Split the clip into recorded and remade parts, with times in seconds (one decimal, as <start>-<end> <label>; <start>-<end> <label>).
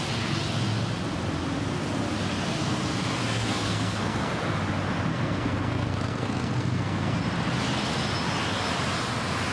0.0-2.6 recorded; 2.6-4.3 remade; 4.3-5.1 recorded; 5.1-7.2 remade; 7.2-9.5 recorded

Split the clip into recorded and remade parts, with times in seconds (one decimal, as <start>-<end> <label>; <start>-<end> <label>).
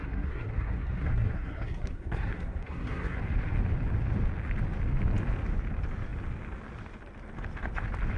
0.0-3.2 remade; 3.2-8.2 recorded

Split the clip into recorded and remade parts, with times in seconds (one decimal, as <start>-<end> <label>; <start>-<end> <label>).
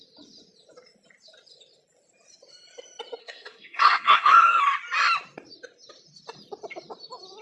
0.0-3.2 recorded; 3.2-4.6 remade; 4.6-7.4 recorded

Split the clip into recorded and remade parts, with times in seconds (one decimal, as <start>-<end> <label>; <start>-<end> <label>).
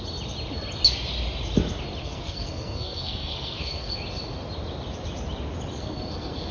0.0-2.0 recorded; 2.0-4.0 remade; 4.0-5.7 recorded; 5.7-6.5 remade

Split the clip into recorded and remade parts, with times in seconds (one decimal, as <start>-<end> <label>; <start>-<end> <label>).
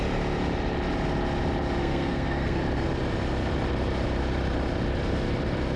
0.0-1.8 recorded; 1.8-2.6 remade; 2.6-5.8 recorded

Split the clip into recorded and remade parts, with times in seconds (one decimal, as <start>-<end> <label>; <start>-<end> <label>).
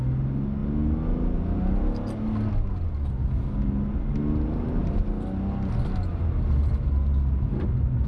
0.0-8.1 recorded